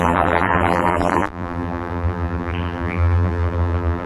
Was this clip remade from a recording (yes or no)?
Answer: yes